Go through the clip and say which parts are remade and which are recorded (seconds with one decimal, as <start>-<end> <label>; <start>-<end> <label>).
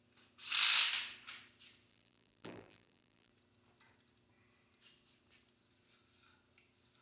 0.0-1.9 recorded; 1.9-3.3 remade; 3.3-7.0 recorded